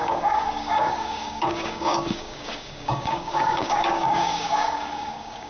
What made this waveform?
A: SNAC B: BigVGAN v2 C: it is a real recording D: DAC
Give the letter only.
D